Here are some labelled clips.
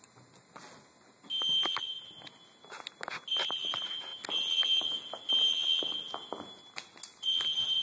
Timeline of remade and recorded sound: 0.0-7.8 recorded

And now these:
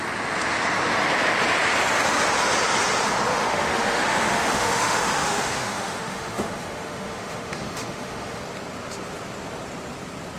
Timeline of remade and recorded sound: 0.0-3.3 recorded; 3.3-8.4 remade; 8.4-10.4 recorded

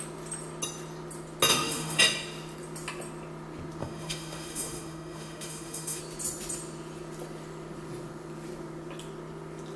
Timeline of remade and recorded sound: 0.0-1.5 recorded; 1.5-2.0 remade; 2.0-3.8 recorded; 3.8-6.0 remade; 6.0-9.8 recorded

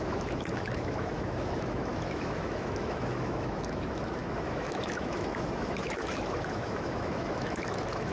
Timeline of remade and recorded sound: 0.0-8.1 remade

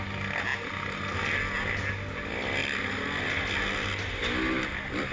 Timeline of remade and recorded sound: 0.0-5.1 recorded